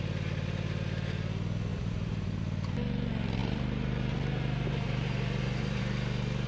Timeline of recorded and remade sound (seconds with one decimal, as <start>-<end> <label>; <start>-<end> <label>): 0.0-1.7 recorded; 1.7-2.4 remade; 2.4-3.4 recorded; 3.4-5.8 remade; 5.8-6.5 recorded